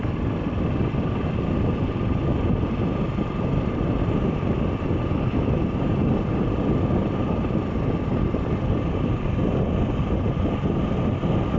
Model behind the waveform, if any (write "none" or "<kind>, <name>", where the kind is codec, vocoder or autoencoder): none